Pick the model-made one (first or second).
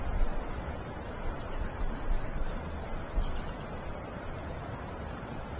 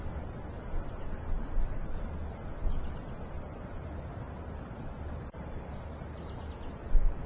first